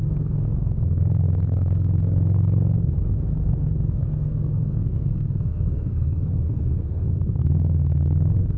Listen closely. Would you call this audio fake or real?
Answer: fake